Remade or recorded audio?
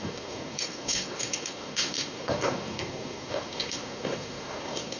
remade